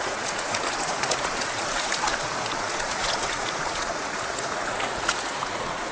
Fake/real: fake